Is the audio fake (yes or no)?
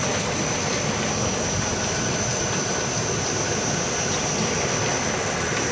no